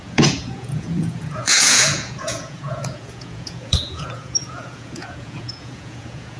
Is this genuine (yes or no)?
no